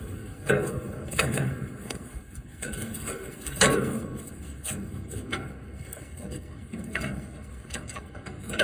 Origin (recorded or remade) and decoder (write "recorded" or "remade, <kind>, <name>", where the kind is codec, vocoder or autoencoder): remade, codec, SNAC